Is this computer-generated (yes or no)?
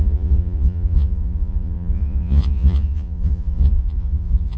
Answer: yes